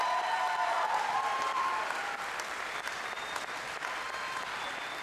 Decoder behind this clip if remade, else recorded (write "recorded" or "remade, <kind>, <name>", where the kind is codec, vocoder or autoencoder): recorded